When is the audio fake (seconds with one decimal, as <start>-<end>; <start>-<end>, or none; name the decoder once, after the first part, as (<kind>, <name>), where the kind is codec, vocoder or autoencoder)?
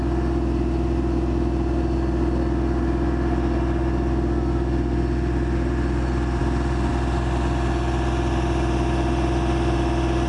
none